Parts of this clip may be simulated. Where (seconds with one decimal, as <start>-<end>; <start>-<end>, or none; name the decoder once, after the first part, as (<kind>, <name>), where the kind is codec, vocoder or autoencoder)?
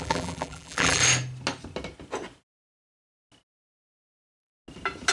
0.0-1.0 (vocoder, BigVGAN v2); 4.1-4.5